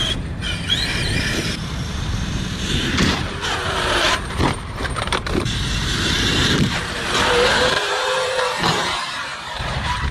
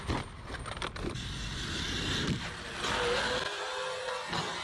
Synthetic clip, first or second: first